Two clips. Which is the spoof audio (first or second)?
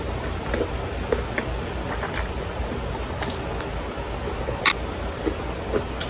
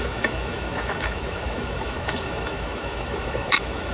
second